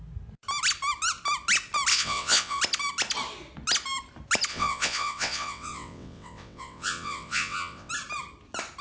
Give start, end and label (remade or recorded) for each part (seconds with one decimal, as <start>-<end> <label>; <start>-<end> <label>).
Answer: 0.0-1.9 recorded; 1.9-2.6 remade; 2.6-4.5 recorded; 4.5-7.9 remade; 7.9-8.8 recorded